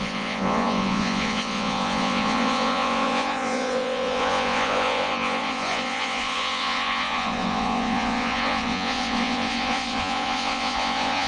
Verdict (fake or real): fake